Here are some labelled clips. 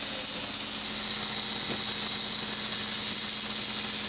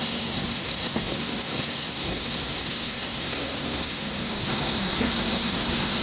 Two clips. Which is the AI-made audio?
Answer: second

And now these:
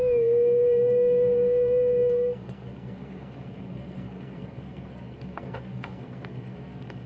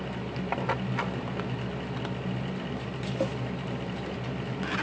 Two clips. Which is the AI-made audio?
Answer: first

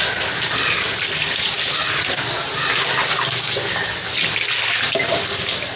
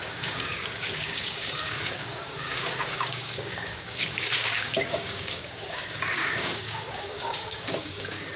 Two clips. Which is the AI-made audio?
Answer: second